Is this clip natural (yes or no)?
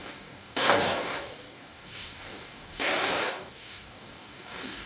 no